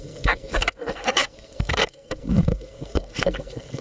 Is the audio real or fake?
fake